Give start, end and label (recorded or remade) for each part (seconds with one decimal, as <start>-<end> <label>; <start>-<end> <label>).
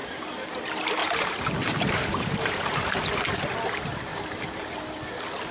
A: 0.0-0.6 remade; 0.6-1.0 recorded; 1.0-2.9 remade; 2.9-4.1 recorded; 4.1-4.8 remade; 4.8-5.5 recorded